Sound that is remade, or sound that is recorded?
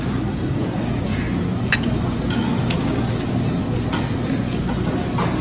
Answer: recorded